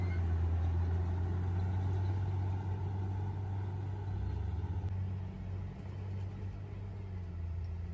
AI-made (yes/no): no